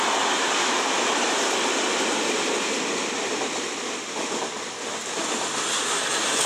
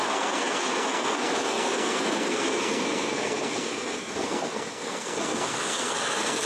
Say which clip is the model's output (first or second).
second